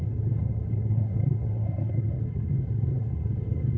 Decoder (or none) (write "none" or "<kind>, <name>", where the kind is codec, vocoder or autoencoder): codec, SNAC